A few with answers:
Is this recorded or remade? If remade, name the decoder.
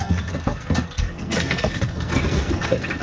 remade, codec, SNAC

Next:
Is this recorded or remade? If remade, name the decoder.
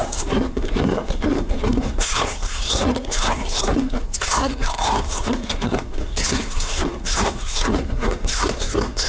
remade, codec, SNAC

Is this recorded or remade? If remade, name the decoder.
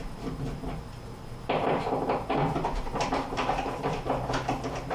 recorded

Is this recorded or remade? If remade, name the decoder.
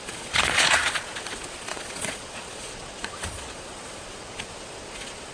remade, vocoder, Vocos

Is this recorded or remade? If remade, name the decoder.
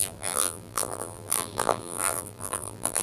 remade, vocoder, BigVGAN v2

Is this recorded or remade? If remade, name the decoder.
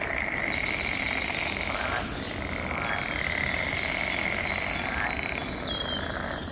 recorded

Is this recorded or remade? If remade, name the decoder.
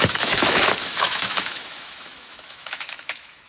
remade, autoencoder, DAC-VAE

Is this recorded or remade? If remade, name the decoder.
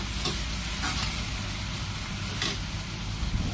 recorded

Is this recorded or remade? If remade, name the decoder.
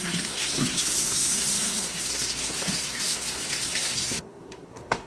remade, codec, SNAC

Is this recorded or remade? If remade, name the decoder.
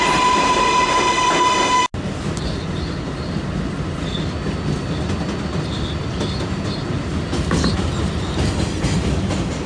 recorded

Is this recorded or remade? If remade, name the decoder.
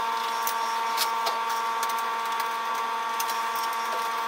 recorded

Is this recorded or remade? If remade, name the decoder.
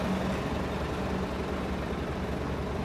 recorded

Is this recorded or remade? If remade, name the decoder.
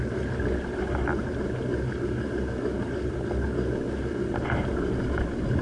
recorded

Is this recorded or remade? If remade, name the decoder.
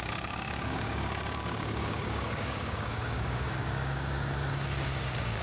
remade, codec, DAC